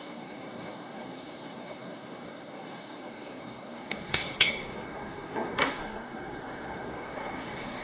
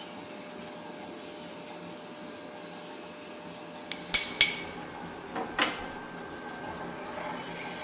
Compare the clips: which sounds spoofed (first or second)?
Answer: first